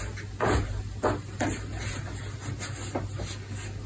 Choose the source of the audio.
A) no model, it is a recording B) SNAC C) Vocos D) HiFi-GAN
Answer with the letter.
A